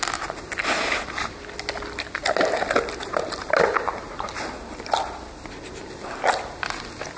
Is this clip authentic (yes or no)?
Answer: yes